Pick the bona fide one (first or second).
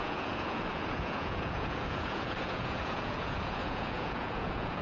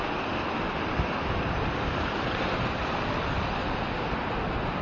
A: second